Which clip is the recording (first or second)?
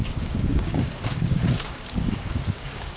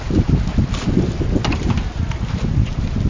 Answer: second